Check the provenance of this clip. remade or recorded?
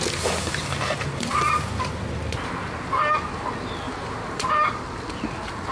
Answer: recorded